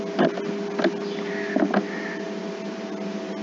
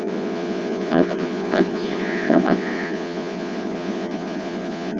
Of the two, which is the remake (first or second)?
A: second